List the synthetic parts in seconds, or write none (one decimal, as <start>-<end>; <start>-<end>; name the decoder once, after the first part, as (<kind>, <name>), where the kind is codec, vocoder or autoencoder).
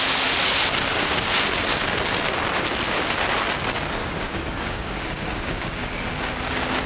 4.0-6.0 (codec, DAC)